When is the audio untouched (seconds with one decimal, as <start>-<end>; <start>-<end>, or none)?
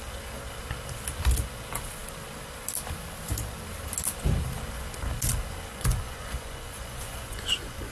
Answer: 0.0-5.7